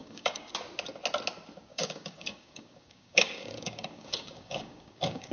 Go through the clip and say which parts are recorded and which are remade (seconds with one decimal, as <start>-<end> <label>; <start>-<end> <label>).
0.0-0.5 remade; 0.5-1.7 recorded; 1.7-5.3 remade